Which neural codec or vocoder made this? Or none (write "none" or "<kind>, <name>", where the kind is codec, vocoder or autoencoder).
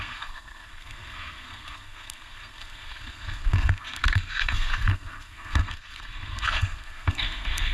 codec, SNAC